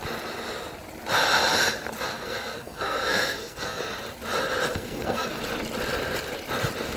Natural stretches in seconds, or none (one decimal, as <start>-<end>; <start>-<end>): 0.0-2.1; 3.8-4.7; 5.4-7.0